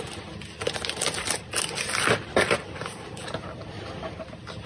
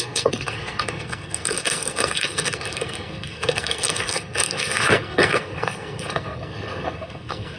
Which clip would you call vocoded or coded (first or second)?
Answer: second